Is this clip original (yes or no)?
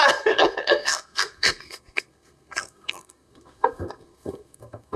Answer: no